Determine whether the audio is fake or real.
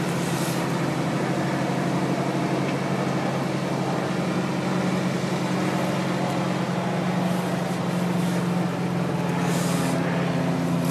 real